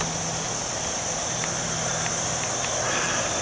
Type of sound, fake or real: real